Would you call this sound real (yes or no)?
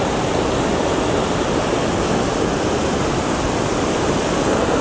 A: yes